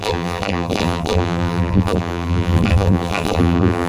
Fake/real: fake